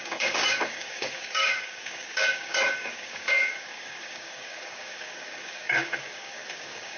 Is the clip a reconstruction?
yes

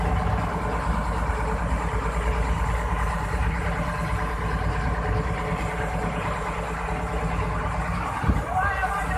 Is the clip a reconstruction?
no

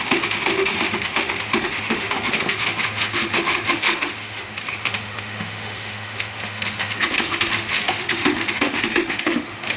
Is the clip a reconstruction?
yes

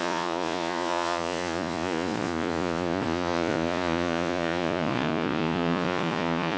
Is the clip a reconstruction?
yes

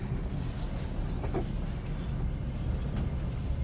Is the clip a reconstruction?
no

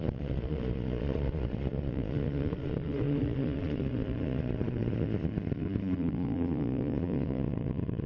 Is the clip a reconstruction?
yes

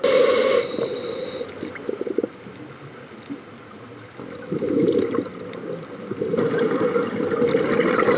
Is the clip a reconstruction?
no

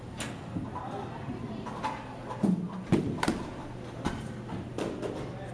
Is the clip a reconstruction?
no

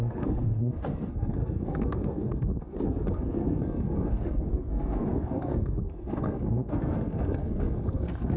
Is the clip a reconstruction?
yes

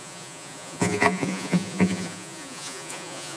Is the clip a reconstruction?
yes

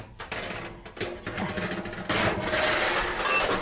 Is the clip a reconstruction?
no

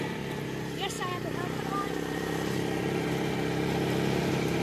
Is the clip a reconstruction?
yes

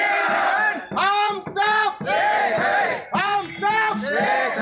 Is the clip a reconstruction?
yes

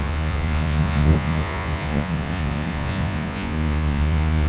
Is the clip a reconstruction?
yes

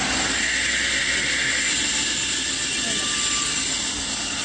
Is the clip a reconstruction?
no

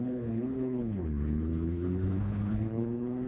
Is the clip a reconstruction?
yes